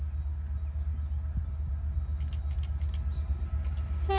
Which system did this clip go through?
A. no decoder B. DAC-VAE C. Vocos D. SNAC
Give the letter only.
A